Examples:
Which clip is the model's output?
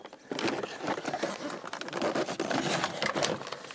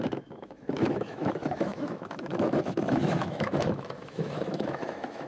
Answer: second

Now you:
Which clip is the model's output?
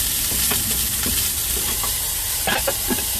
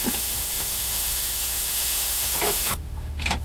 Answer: second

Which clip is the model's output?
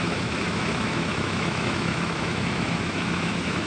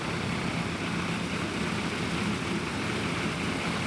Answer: first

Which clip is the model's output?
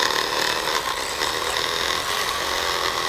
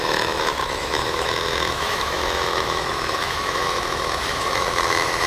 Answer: second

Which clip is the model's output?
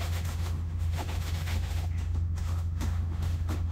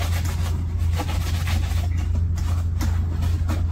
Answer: first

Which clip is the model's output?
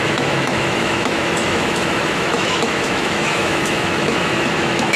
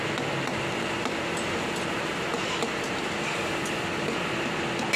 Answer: first